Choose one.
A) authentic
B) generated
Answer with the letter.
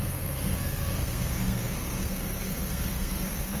B